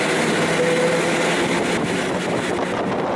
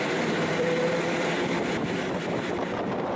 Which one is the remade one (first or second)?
second